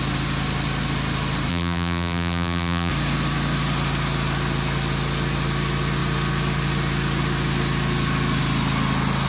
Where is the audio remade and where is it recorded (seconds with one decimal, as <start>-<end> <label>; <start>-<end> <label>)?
0.0-1.5 recorded; 1.5-2.9 remade; 2.9-9.3 recorded

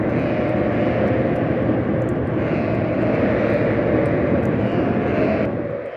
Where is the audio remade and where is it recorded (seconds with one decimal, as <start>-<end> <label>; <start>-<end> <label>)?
0.0-6.0 recorded

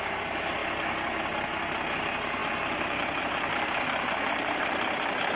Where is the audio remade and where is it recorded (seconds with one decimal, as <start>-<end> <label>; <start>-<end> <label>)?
0.0-0.6 remade; 0.6-2.0 recorded; 2.0-5.4 remade

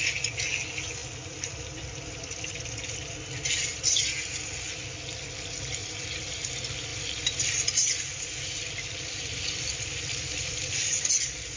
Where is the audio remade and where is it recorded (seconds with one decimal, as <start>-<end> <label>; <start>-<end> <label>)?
0.0-1.0 recorded; 1.0-3.4 remade; 3.4-5.8 recorded; 5.8-6.5 remade; 6.5-6.9 recorded; 6.9-11.1 remade; 11.1-11.6 recorded

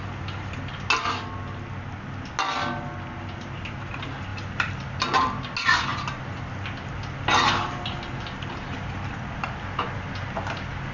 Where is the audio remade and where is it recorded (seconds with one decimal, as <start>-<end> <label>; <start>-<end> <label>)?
0.0-4.3 recorded; 4.3-5.4 remade; 5.4-10.9 recorded

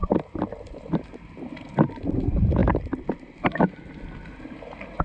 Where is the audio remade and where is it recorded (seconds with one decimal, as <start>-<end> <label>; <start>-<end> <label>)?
0.0-1.5 remade; 1.5-5.0 recorded

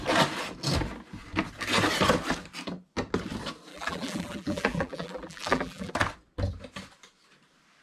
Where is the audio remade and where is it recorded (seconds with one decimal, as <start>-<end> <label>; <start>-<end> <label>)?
0.0-3.7 recorded; 3.7-5.9 remade; 5.9-7.8 recorded

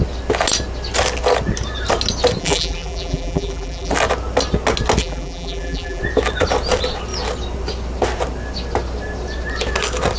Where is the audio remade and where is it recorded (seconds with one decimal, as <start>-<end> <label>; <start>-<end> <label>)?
0.0-2.4 recorded; 2.4-3.9 remade; 3.9-5.0 recorded; 5.0-6.0 remade; 6.0-10.2 recorded